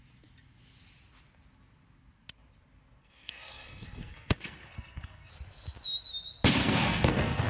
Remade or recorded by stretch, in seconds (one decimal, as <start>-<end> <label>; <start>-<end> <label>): 0.0-3.0 recorded; 3.0-5.3 remade; 5.3-6.6 recorded; 6.6-7.5 remade

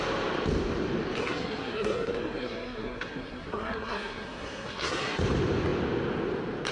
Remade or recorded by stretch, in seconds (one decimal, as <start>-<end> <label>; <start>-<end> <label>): 0.0-1.2 recorded; 1.2-5.2 remade; 5.2-6.7 recorded

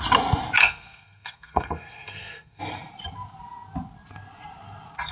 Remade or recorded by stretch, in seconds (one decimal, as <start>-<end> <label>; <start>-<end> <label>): 0.0-0.6 recorded; 0.6-2.6 remade; 2.6-5.1 recorded